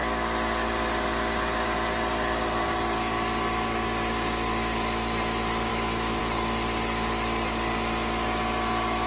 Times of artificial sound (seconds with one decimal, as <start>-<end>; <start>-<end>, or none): 5.7-6.2